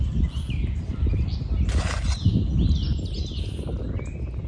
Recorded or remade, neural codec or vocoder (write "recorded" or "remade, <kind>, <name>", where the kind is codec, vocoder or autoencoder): recorded